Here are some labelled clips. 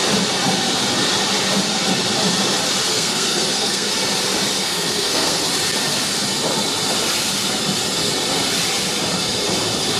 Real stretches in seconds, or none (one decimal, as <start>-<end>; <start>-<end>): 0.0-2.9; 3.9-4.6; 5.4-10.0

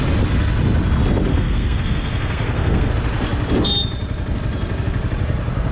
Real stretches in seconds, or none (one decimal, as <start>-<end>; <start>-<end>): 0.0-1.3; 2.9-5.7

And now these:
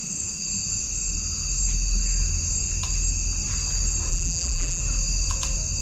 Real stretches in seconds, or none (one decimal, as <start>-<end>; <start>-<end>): 0.0-4.1; 4.8-5.8

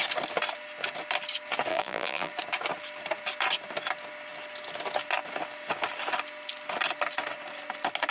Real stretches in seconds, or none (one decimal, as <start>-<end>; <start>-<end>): 0.0-1.7; 2.3-8.1

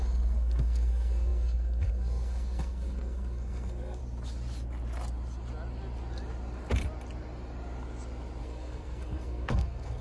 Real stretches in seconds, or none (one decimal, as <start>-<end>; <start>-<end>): 4.0-8.4

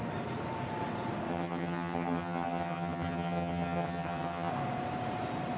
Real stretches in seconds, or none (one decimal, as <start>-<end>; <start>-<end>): 0.0-1.3; 4.5-5.6